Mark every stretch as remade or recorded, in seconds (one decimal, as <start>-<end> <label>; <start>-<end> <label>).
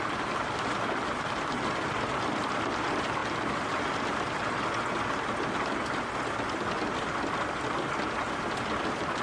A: 0.0-9.2 recorded